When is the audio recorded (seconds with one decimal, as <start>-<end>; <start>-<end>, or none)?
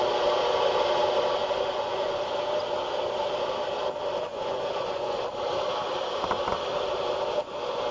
0.0-1.4; 2.2-4.3; 5.2-7.9